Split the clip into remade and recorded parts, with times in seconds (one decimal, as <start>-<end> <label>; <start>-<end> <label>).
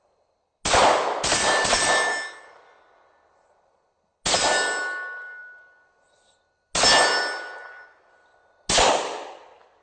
0.0-9.8 recorded